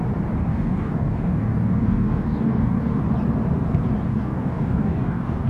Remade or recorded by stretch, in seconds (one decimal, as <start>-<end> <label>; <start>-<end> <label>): 0.0-0.4 recorded; 0.4-3.0 remade; 3.0-4.1 recorded; 4.1-5.5 remade